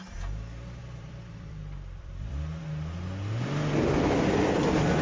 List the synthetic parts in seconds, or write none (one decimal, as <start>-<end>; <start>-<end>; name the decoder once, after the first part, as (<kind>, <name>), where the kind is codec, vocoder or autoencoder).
0.8-2.6 (vocoder, BigVGAN v2)